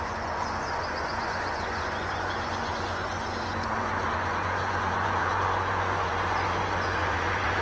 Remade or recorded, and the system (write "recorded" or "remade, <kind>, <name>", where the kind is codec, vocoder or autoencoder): remade, vocoder, Vocos